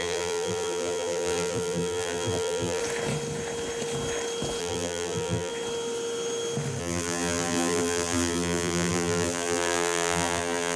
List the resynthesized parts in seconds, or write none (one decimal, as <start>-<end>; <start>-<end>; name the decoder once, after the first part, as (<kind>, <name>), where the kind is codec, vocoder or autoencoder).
0.0-2.8 (vocoder, BigVGAN v2); 4.6-5.5; 6.8-10.8